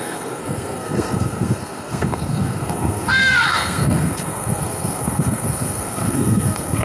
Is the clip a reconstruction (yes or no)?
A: yes